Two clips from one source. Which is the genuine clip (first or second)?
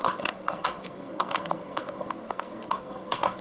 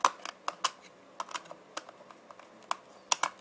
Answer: second